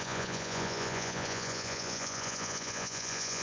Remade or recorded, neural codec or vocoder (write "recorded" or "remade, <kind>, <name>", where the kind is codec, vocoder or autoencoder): remade, vocoder, Vocos